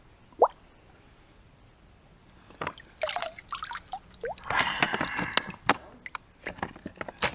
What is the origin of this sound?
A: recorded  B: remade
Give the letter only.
A